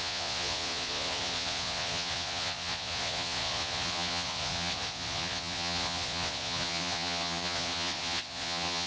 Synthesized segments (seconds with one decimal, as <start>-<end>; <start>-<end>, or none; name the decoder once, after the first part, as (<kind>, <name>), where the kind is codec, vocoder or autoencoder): 0.0-8.9 (vocoder, Vocos)